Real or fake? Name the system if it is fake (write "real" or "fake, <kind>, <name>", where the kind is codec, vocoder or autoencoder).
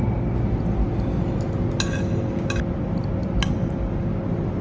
real